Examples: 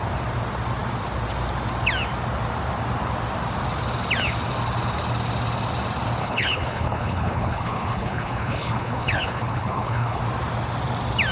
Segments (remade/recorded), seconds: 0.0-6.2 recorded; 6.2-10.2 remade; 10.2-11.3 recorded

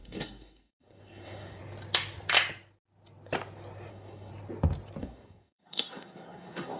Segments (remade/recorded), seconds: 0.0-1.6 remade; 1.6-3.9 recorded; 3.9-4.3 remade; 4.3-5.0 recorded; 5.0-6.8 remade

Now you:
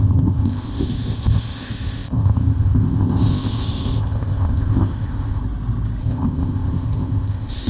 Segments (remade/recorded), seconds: 0.0-5.4 remade; 5.4-6.0 recorded; 6.0-7.7 remade